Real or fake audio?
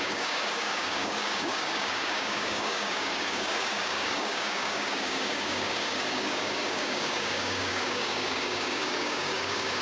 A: fake